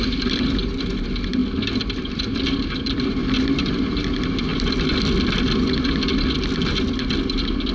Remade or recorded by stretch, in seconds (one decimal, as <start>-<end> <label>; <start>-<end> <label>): 0.0-7.7 recorded